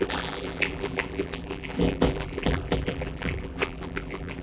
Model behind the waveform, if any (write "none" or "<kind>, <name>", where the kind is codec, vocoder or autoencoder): vocoder, BigVGAN v2